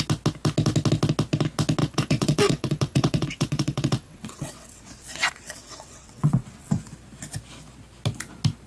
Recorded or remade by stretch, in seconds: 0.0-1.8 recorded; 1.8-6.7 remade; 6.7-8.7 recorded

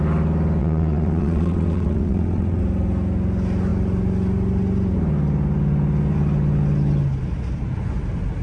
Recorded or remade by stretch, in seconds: 0.0-0.6 recorded; 0.6-2.6 remade; 2.6-8.4 recorded

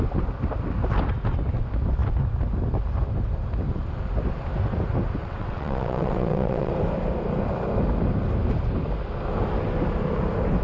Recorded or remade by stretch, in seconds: 0.0-5.2 recorded; 5.2-6.7 remade; 6.7-10.6 recorded

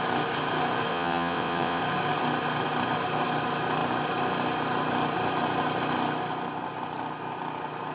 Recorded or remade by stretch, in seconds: 0.0-0.9 recorded; 0.9-1.8 remade; 1.8-7.9 recorded

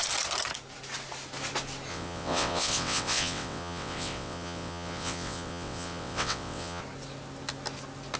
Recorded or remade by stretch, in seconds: 0.0-1.9 recorded; 1.9-6.8 remade; 6.8-8.2 recorded